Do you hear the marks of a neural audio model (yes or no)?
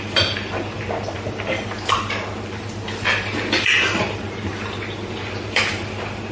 yes